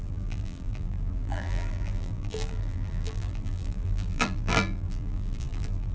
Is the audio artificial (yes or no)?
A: yes